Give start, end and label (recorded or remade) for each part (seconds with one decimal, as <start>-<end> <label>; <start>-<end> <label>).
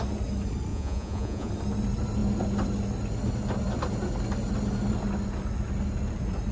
0.0-0.7 recorded; 0.7-1.5 remade; 1.5-6.5 recorded